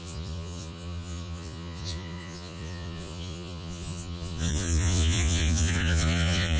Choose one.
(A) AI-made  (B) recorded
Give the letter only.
A